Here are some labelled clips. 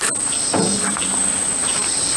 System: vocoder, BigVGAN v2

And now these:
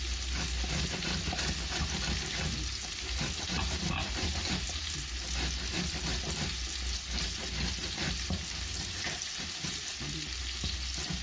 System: none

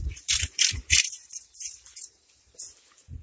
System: vocoder, BigVGAN v2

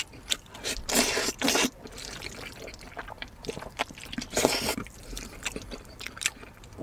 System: vocoder, BigVGAN v2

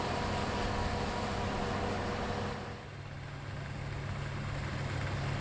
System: none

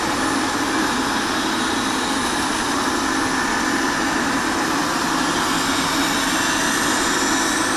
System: none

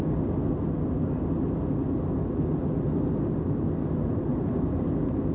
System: none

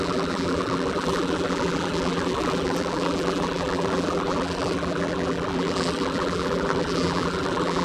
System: vocoder, BigVGAN v2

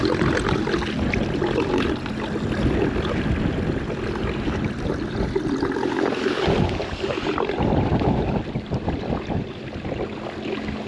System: none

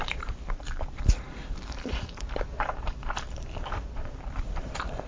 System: vocoder, BigVGAN v2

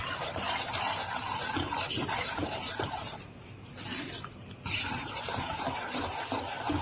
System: vocoder, BigVGAN v2